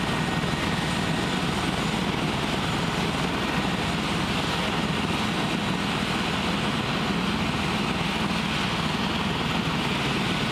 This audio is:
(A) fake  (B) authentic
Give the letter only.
B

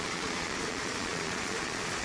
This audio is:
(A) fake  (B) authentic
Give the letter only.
A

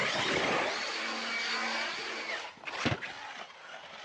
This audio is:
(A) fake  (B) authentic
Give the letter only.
B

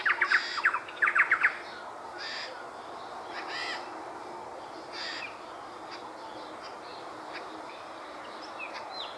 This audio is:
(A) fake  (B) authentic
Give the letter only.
B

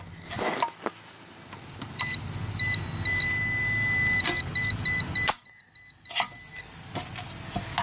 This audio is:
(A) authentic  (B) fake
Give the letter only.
A